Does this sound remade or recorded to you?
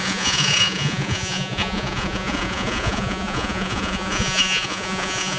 remade